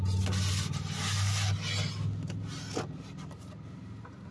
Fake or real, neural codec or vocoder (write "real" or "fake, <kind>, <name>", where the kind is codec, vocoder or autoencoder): real